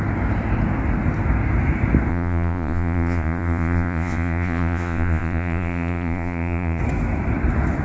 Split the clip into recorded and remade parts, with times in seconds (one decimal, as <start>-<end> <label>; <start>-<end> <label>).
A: 0.0-2.1 recorded; 2.1-6.8 remade; 6.8-7.8 recorded